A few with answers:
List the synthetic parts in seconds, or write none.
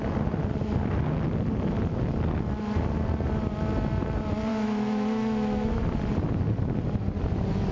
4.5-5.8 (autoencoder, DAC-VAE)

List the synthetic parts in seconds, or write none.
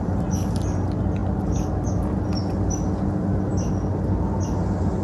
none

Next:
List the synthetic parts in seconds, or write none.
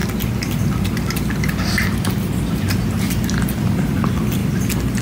none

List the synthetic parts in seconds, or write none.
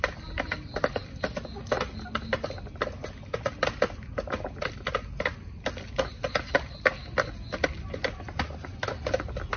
none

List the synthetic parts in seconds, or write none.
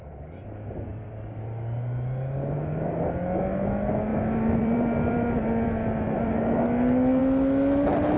0.9-1.4 (vocoder, BigVGAN v2); 4.1-6.3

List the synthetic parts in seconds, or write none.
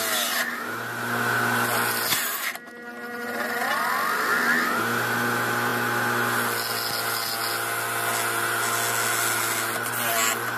none